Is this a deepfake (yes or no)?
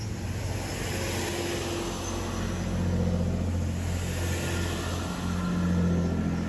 no